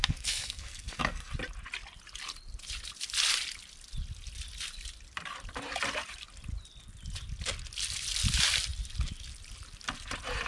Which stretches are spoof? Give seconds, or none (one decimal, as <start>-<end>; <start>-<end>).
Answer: 0.0-1.3